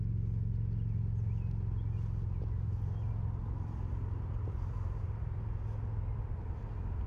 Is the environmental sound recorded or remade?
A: recorded